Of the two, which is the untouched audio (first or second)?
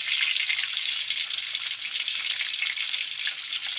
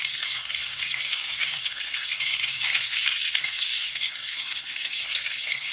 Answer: first